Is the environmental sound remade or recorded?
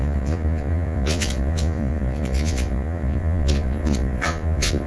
remade